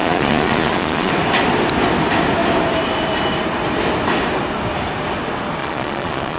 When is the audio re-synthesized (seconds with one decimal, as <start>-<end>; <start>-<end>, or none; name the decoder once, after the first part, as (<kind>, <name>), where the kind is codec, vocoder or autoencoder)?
0.0-1.1 (vocoder, Vocos); 5.6-6.4